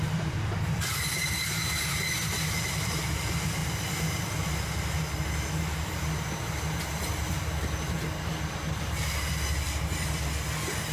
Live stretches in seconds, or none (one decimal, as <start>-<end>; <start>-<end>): 3.6-6.4